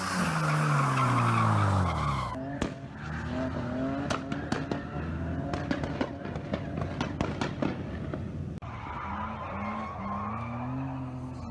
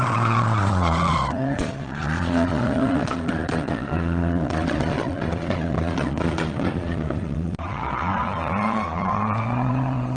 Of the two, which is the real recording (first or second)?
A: first